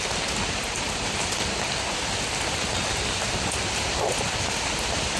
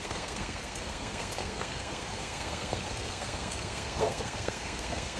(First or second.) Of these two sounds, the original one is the first